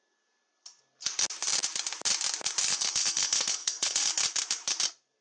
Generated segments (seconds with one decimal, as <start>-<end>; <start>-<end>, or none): 2.7-4.1